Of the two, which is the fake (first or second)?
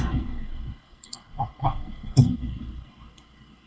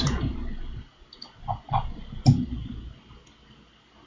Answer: first